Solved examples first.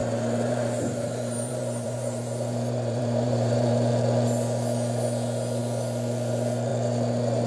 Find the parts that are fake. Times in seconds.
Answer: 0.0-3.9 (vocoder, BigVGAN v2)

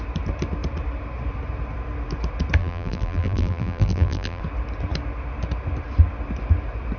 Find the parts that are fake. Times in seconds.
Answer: 2.6-4.4 (vocoder, BigVGAN v2)

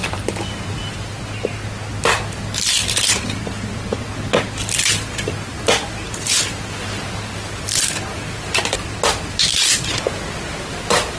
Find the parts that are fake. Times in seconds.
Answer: 0.0-1.2 (vocoder, BigVGAN v2)

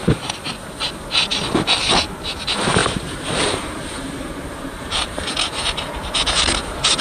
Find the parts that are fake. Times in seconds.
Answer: 2.8-5.3 (vocoder, BigVGAN v2)